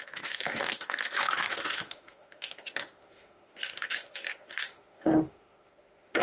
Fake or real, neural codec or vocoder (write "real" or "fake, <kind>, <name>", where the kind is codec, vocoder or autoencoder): fake, autoencoder, DAC-VAE